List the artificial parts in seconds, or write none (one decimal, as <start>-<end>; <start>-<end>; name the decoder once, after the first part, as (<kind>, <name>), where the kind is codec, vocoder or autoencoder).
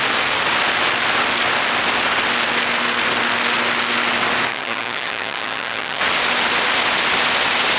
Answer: 4.5-6.0 (vocoder, HiFi-GAN)